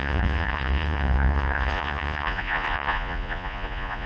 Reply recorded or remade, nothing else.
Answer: remade